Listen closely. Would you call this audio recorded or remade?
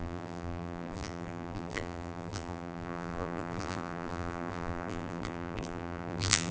remade